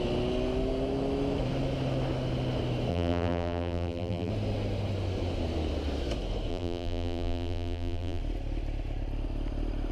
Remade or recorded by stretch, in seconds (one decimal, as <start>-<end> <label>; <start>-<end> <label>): 0.0-2.9 recorded; 2.9-4.3 remade; 4.3-6.5 recorded; 6.5-8.2 remade; 8.2-9.9 recorded